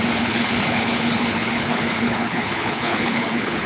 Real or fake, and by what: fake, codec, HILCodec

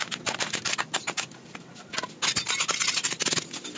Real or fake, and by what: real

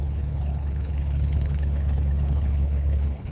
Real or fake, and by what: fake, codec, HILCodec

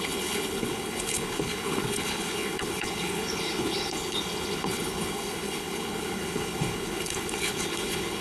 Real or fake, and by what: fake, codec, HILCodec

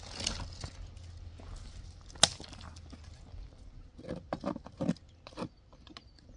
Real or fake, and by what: real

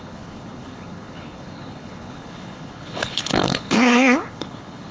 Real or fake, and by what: fake, codec, HILCodec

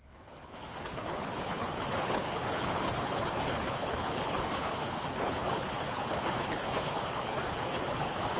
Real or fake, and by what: fake, codec, HILCodec